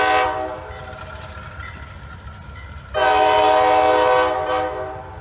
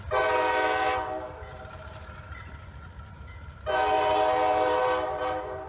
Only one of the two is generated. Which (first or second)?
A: second